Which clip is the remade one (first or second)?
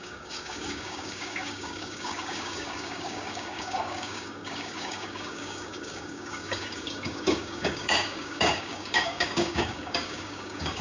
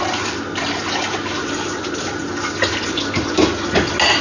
first